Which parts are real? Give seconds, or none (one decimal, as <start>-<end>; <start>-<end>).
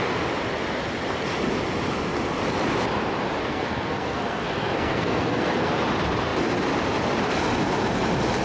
0.0-3.4; 5.7-8.4